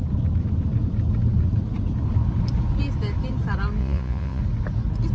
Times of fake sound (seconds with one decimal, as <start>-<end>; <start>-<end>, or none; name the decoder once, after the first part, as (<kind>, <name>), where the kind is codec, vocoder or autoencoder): 3.8-4.4 (vocoder, Vocos)